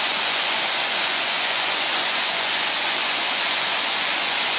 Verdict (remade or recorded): remade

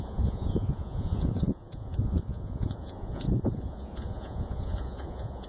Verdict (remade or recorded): remade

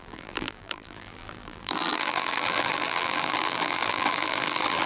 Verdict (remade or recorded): remade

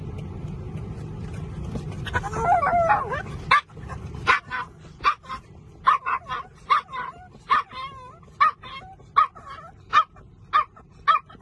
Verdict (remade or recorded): recorded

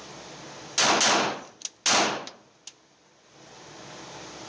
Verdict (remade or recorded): recorded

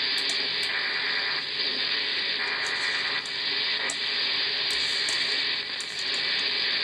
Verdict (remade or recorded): recorded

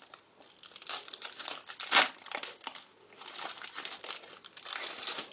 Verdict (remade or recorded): recorded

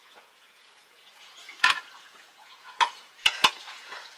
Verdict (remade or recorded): remade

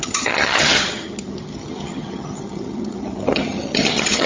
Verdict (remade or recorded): remade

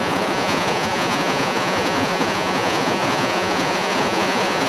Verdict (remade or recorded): remade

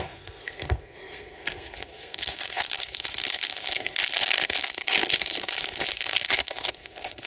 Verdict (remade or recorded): remade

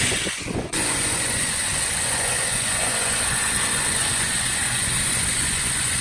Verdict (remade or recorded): remade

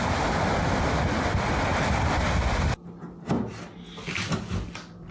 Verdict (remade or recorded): recorded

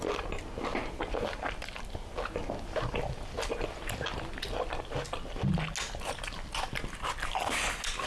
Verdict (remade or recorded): recorded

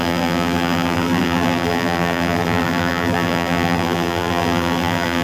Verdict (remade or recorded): remade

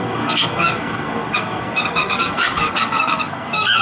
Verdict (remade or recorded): remade